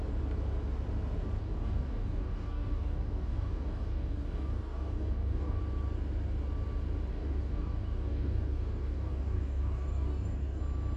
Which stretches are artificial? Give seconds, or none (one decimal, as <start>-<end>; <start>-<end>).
1.4-5.6; 7.1-10.6